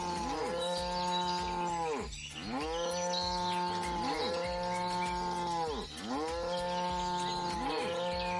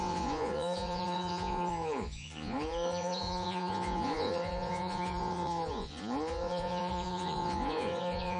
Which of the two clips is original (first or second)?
first